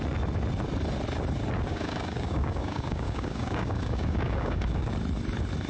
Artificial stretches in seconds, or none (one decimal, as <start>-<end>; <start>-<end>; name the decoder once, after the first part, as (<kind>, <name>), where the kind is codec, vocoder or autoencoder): 1.7-4.9 (codec, DAC)